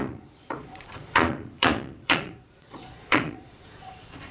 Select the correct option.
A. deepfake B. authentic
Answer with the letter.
A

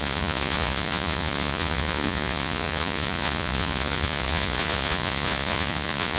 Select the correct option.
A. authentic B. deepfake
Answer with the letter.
B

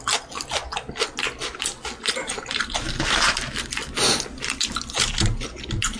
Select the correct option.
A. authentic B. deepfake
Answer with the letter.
A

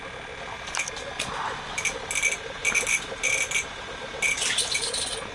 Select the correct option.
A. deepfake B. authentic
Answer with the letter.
B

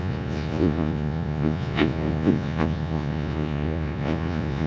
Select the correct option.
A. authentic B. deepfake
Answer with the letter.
B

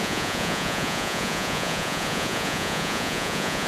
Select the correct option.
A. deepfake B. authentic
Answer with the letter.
A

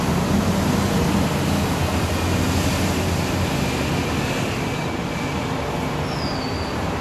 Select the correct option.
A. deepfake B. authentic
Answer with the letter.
B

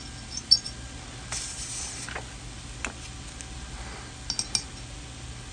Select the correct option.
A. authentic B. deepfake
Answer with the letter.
A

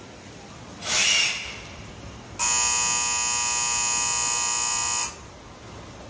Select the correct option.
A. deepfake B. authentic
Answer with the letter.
B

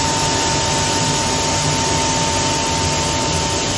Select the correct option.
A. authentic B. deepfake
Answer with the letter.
A